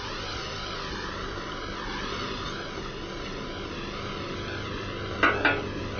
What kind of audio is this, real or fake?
real